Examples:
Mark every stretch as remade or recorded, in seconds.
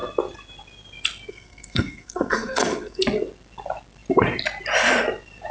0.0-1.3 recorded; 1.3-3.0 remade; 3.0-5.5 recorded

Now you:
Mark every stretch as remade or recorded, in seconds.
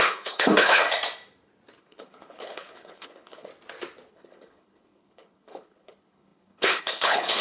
0.0-0.8 remade; 0.8-1.8 recorded; 1.8-3.5 remade; 3.5-4.1 recorded; 4.1-7.4 remade